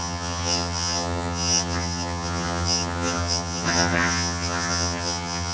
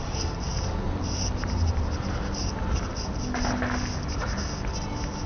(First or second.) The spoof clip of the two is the first